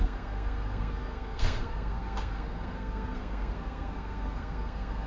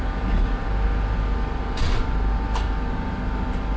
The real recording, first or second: second